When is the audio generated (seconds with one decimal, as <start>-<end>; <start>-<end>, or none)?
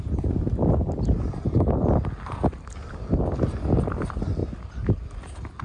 none